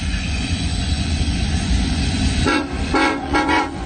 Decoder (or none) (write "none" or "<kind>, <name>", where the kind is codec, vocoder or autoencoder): vocoder, Vocos